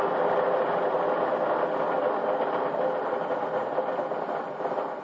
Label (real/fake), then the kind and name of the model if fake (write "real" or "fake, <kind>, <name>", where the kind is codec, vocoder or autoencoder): real